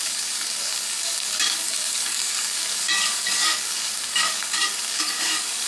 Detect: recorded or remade remade